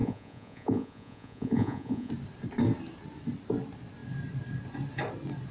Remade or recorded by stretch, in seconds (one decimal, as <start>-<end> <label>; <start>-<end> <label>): 0.0-2.1 remade; 2.1-5.5 recorded